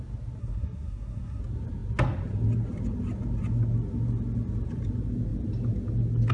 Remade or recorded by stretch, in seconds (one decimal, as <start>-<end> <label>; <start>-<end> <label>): 0.0-0.4 recorded; 0.4-1.4 remade; 1.4-6.3 recorded

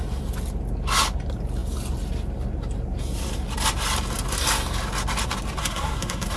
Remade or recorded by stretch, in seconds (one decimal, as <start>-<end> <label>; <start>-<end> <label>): 0.0-5.6 recorded; 5.6-6.4 remade

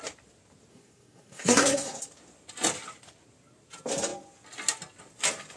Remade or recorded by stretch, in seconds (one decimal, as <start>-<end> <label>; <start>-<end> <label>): 0.0-0.7 recorded; 0.7-2.0 remade; 2.0-5.6 recorded

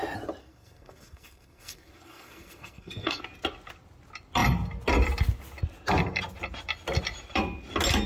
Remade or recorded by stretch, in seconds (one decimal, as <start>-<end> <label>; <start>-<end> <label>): 0.0-0.4 recorded; 0.4-3.2 remade; 3.2-8.1 recorded

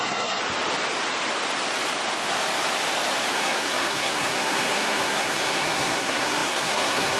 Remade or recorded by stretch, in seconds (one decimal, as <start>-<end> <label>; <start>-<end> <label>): 0.0-0.4 remade; 0.4-3.3 recorded; 3.3-7.2 remade

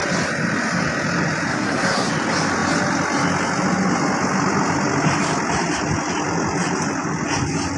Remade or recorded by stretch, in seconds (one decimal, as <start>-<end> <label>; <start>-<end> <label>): 0.0-1.5 recorded; 1.5-2.1 remade; 2.1-7.8 recorded